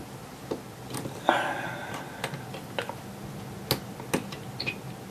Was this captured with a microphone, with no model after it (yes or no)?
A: yes